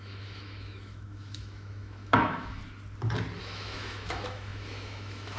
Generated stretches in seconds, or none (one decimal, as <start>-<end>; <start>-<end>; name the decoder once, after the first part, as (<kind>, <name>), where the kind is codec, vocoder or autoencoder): 0.0-2.6 (autoencoder, DAC-VAE); 3.4-5.4